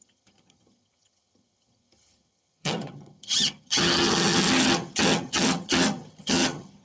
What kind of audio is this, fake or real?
fake